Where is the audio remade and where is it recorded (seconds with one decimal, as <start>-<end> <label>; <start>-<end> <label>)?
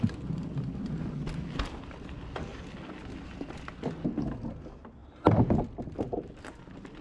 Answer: 0.0-7.0 recorded